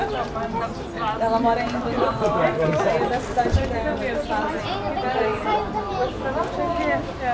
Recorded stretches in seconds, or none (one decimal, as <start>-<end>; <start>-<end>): 0.0-7.3

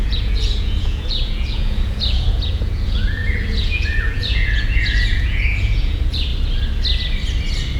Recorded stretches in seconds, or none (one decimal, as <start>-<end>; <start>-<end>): 6.3-7.8